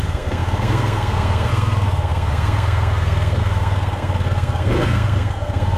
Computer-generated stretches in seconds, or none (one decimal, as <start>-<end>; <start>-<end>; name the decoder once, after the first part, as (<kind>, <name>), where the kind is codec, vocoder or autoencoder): 0.0-5.8 (codec, SNAC)